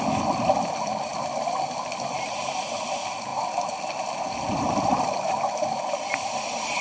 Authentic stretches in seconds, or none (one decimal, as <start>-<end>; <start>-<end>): 0.0-6.8